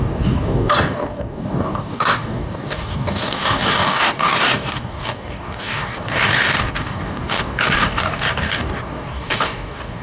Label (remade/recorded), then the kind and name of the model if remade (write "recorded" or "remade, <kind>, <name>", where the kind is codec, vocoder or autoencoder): remade, codec, DAC